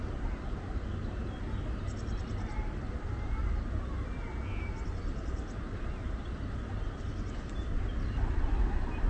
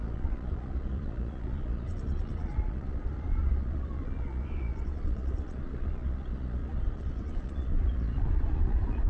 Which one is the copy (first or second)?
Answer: second